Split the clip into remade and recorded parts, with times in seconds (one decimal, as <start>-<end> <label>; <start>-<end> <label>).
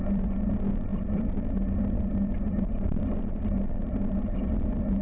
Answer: 0.0-5.0 remade